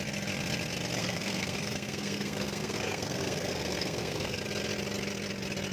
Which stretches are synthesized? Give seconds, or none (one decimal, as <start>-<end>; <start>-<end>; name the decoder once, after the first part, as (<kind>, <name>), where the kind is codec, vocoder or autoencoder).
1.0-4.4 (codec, SNAC)